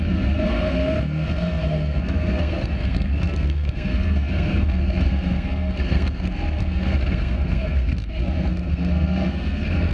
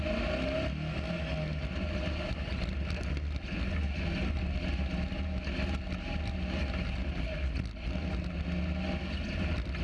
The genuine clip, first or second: second